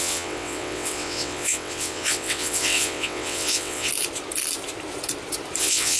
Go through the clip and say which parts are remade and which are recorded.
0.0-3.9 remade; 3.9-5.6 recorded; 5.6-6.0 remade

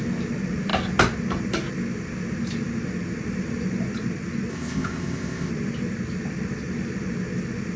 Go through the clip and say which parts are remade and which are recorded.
0.0-4.5 recorded; 4.5-5.5 remade; 5.5-7.8 recorded

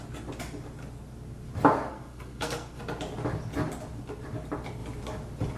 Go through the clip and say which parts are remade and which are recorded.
0.0-1.9 recorded; 1.9-2.8 remade; 2.8-5.6 recorded

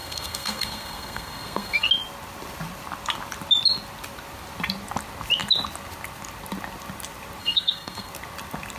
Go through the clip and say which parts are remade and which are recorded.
0.0-1.9 remade; 1.9-7.4 recorded; 7.4-8.1 remade; 8.1-8.8 recorded

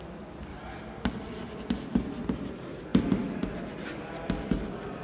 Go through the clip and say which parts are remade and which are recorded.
0.0-2.9 recorded; 2.9-3.6 remade; 3.6-5.0 recorded

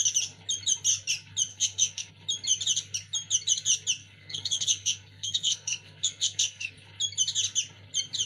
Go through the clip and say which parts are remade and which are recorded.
0.0-1.5 recorded; 1.5-2.1 remade; 2.1-4.0 recorded; 4.0-6.7 remade; 6.7-8.3 recorded

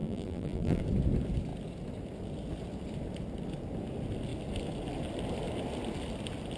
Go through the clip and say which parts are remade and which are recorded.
0.0-0.8 remade; 0.8-6.6 recorded